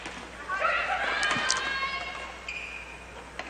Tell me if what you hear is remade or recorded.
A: recorded